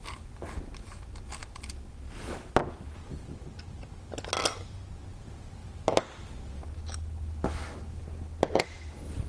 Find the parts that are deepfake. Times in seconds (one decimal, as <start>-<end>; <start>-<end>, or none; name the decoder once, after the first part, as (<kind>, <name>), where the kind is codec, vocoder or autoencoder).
none